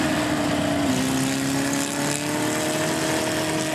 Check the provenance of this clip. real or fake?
real